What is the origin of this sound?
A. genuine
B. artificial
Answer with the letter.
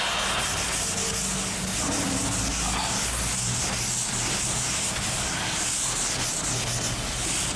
A